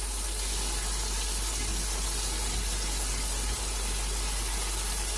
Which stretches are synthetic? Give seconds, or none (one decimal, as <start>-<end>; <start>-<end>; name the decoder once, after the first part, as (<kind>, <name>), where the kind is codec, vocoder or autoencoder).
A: none